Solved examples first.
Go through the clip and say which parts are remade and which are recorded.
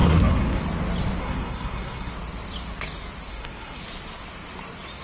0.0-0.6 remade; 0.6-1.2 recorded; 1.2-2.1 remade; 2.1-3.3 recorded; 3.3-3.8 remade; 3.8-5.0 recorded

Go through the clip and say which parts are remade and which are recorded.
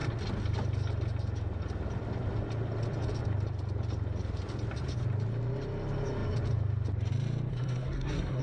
0.0-7.5 recorded; 7.5-8.4 remade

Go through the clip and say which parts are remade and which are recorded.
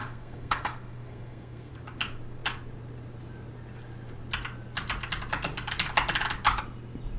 0.0-1.7 remade; 1.7-7.2 recorded